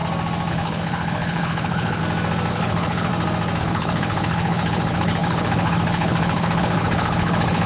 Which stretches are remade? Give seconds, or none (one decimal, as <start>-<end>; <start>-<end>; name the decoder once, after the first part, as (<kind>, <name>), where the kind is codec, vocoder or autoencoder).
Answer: 0.5-2.0 (codec, HILCodec); 2.5-3.1; 3.6-7.7